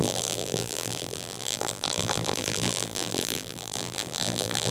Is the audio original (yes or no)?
no